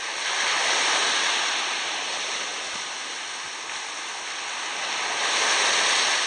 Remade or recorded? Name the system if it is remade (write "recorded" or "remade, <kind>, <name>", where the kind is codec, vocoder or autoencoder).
recorded